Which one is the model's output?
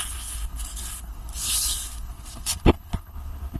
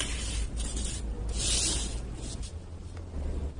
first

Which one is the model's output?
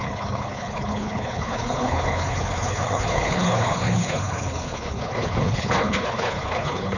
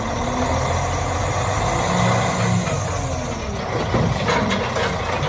first